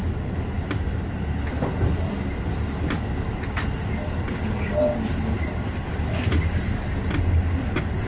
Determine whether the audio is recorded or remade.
recorded